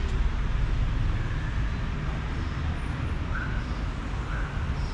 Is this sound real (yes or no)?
yes